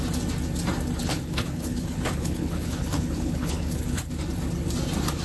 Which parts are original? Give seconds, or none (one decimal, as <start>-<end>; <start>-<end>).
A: 0.0-1.0; 4.1-5.2